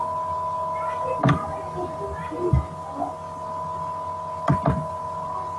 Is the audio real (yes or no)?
yes